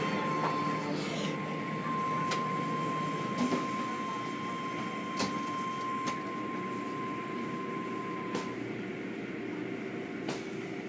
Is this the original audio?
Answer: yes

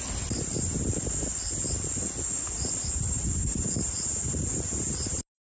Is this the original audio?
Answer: yes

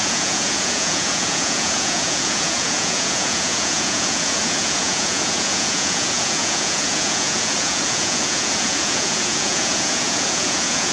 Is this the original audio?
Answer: no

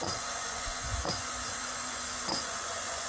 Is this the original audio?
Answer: no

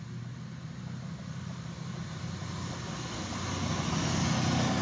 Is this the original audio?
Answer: yes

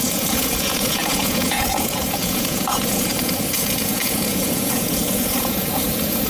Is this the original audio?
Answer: no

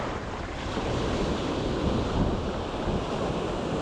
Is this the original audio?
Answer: yes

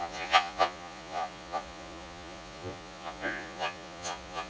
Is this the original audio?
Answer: no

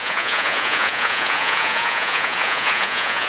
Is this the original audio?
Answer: no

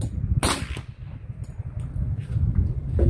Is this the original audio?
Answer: yes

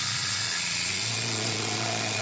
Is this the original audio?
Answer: no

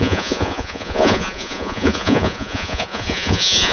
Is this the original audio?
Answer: no